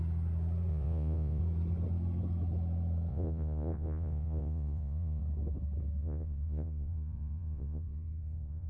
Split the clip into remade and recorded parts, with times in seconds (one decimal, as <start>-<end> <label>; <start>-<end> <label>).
0.0-0.7 recorded; 0.7-1.4 remade; 1.4-3.1 recorded; 3.1-5.2 remade; 5.2-6.0 recorded; 6.0-8.7 remade